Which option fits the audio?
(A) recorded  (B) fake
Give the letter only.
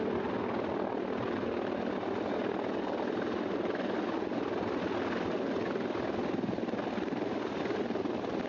A